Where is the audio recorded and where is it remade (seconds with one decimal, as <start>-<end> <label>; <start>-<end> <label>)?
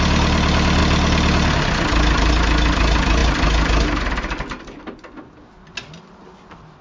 0.0-6.8 recorded